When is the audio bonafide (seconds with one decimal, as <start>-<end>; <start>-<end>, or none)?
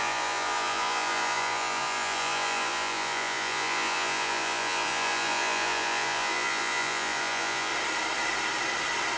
7.7-9.2